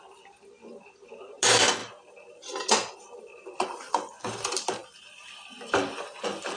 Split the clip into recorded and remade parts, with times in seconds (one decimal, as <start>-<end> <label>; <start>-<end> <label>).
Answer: 0.0-6.6 recorded

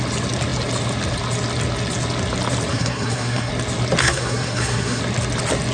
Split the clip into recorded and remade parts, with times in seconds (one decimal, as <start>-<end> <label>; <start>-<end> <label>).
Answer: 0.0-2.7 recorded; 2.7-3.5 remade; 3.5-4.0 recorded; 4.0-5.0 remade; 5.0-5.7 recorded